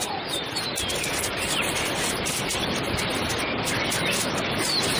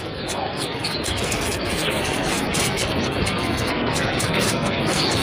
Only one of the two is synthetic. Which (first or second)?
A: second